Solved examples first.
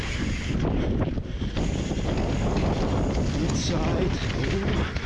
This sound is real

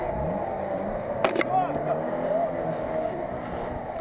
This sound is real